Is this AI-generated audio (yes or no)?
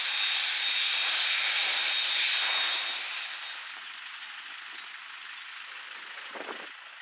no